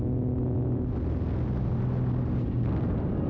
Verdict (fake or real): real